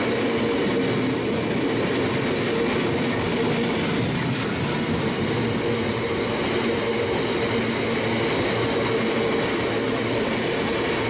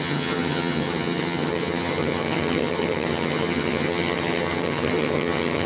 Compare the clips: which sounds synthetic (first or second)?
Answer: second